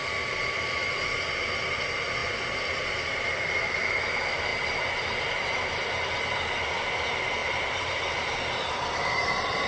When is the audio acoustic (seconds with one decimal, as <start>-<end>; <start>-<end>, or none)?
0.0-2.2; 3.3-7.4; 8.1-9.7